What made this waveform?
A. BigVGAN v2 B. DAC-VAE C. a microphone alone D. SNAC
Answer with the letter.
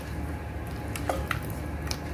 C